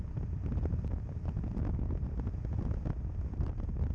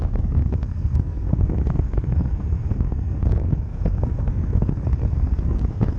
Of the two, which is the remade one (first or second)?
second